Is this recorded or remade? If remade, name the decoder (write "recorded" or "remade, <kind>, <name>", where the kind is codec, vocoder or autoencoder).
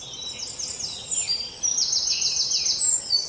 recorded